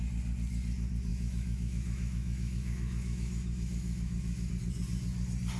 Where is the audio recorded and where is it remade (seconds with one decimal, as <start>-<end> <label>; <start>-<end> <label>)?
0.0-1.1 recorded; 1.1-4.5 remade; 4.5-5.6 recorded